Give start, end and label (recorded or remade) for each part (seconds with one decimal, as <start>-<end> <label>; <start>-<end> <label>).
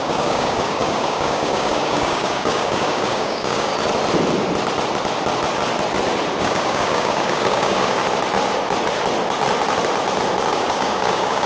0.0-3.7 remade; 3.7-6.4 recorded; 6.4-8.0 remade; 8.0-10.5 recorded; 10.5-11.5 remade